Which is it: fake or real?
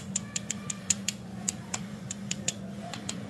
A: fake